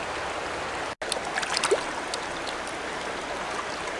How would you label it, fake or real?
real